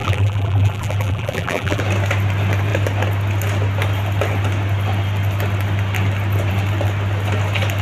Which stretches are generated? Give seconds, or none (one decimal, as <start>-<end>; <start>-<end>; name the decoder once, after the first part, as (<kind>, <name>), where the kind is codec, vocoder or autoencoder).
0.0-1.8 (vocoder, BigVGAN v2)